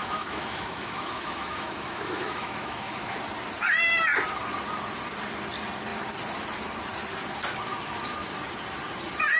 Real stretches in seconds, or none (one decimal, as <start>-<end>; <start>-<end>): 3.2-9.4